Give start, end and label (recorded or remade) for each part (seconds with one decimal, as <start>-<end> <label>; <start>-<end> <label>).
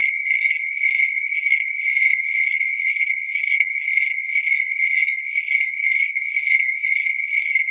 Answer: 0.0-7.7 remade